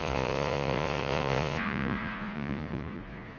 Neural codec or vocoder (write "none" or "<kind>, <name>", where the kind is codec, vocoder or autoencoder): vocoder, Vocos